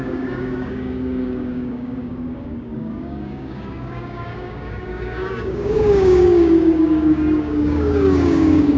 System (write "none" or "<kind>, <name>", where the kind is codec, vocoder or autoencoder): codec, DAC